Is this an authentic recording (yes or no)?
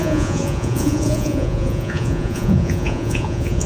no